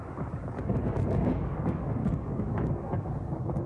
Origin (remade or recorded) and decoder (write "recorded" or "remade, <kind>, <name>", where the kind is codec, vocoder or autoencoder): remade, codec, DAC